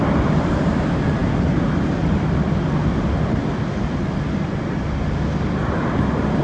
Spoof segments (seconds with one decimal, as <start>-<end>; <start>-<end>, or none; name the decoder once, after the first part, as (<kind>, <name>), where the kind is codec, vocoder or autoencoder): none